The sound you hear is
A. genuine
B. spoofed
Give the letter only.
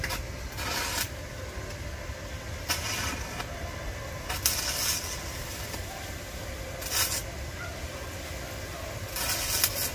A